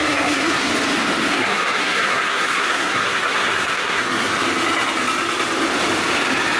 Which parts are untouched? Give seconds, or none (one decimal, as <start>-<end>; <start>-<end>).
0.7-1.3; 4.3-6.6